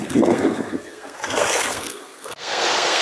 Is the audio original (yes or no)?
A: no